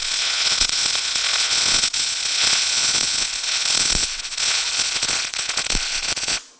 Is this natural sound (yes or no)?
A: no